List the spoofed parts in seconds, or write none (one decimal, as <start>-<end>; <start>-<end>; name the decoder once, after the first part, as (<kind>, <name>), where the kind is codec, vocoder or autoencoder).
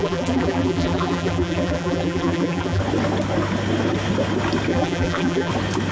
0.0-2.8 (vocoder, BigVGAN v2); 4.7-5.5